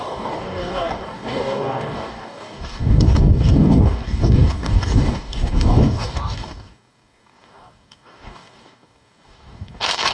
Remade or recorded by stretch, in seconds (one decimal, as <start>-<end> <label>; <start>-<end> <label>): 0.0-10.1 remade